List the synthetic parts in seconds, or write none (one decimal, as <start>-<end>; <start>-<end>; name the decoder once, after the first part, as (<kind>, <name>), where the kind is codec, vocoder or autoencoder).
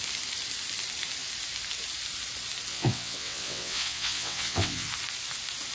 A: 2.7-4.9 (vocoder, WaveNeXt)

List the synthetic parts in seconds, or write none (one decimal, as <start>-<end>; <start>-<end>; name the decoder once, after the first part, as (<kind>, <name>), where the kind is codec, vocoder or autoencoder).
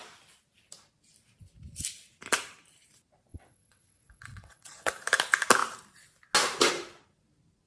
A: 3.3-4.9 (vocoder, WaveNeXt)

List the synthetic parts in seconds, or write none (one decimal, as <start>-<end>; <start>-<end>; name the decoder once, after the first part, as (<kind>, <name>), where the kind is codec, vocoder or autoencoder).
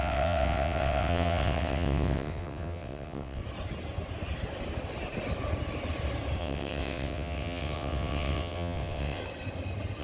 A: 0.0-3.4 (vocoder, WaveNeXt); 6.4-9.2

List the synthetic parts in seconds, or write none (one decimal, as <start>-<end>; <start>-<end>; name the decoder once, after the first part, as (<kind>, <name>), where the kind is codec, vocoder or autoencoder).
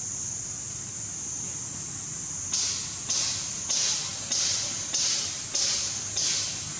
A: none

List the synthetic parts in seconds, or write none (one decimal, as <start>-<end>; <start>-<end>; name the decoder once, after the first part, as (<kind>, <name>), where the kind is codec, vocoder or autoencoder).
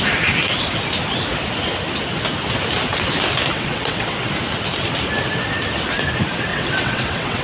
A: 3.5-4.3 (vocoder, WaveNeXt); 6.5-7.4